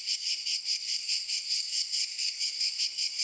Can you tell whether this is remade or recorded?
remade